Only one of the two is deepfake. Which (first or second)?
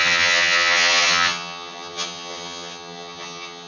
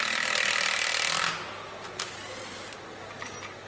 first